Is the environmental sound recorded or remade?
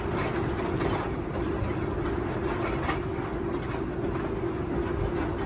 recorded